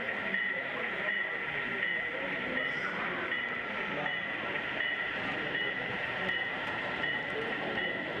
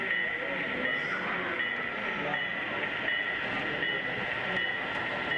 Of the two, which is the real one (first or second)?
second